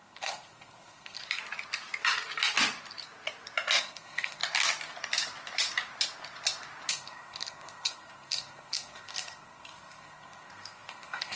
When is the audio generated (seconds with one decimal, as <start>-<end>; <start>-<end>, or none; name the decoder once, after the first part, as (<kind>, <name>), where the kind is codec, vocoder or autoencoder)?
0.0-1.2 (codec, SNAC); 3.8-4.4; 6.9-11.4